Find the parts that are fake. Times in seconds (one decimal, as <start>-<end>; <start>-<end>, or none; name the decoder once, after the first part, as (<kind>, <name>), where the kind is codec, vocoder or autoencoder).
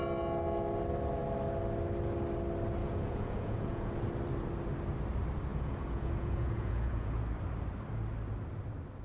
2.8-3.9 (vocoder, Vocos); 5.5-7.2